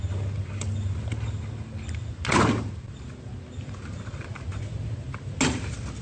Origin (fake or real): real